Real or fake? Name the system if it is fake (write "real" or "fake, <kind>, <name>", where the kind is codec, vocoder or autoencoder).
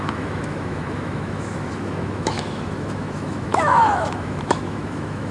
fake, autoencoder, DAC-VAE